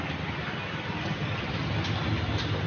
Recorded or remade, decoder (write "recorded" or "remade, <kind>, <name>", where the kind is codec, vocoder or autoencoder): recorded